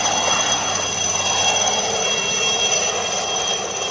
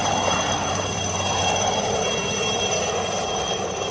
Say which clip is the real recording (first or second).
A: first